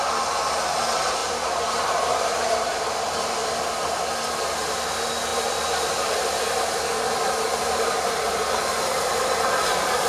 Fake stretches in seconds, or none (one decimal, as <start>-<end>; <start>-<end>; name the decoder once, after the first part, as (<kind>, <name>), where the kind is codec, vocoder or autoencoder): 1.2-2.9 (vocoder, BigVGAN v2)